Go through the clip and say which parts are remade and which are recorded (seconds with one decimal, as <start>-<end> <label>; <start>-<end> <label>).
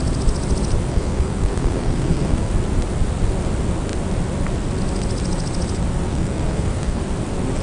0.0-0.9 recorded; 0.9-2.5 remade; 2.5-6.1 recorded; 6.1-7.0 remade; 7.0-7.6 recorded